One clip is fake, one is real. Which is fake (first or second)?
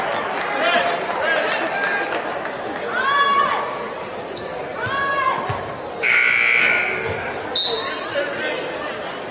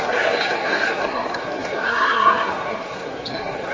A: second